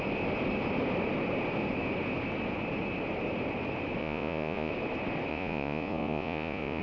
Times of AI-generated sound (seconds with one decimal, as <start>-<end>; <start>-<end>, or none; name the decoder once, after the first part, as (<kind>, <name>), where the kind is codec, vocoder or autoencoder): 4.0-4.7 (vocoder, Vocos); 5.3-6.8